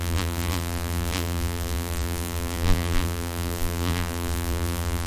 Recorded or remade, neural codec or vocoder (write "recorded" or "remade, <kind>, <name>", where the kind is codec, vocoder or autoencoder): remade, vocoder, BigVGAN v2